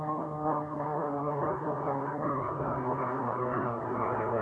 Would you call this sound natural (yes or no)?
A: no